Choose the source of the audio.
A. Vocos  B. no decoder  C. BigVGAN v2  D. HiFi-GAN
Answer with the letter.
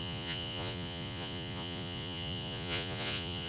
A